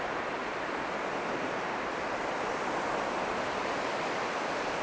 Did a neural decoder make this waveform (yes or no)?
no